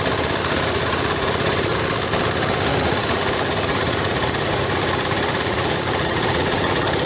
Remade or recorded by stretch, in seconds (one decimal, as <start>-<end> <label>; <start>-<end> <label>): 0.0-0.4 recorded; 0.4-1.8 remade; 1.8-2.7 recorded; 2.7-7.1 remade